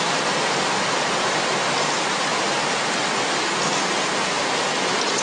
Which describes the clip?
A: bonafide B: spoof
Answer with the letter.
A